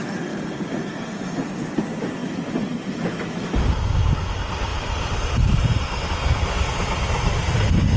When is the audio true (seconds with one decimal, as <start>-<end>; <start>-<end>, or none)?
0.0-8.0